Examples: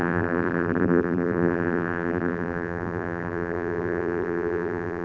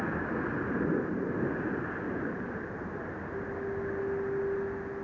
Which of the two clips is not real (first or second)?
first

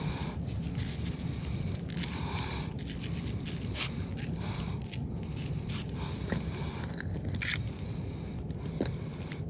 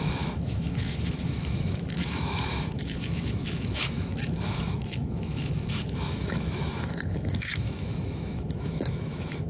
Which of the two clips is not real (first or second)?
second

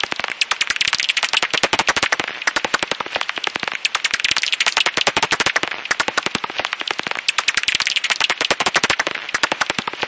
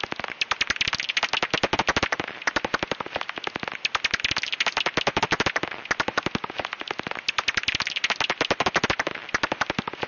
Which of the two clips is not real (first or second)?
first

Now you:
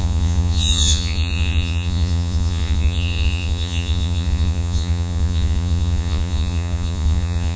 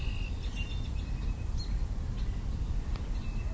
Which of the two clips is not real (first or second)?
first